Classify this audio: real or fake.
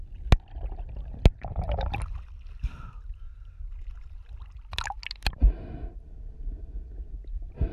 real